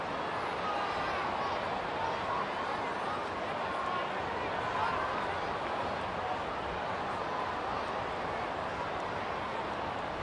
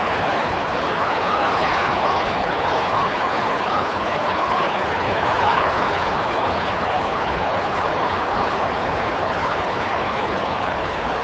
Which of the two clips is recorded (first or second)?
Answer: first